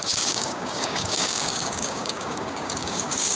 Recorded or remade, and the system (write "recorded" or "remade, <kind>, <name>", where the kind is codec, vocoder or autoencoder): remade, codec, DAC